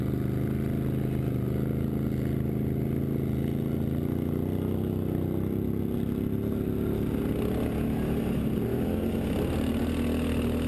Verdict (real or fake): real